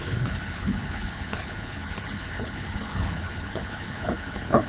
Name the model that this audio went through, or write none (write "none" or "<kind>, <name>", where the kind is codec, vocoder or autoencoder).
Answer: codec, HILCodec